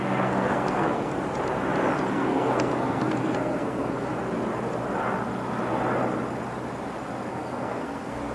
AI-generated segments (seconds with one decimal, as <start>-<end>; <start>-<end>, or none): 0.0-1.1; 2.1-4.1; 7.3-8.3

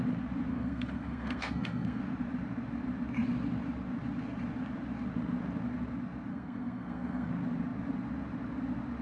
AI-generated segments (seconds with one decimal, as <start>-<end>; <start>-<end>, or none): 0.5-2.0; 6.3-7.3

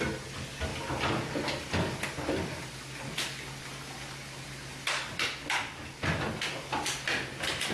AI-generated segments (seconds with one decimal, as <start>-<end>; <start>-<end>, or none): none

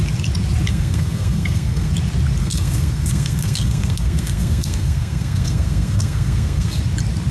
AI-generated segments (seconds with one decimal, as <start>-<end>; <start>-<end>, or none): 0.7-1.9; 2.4-6.8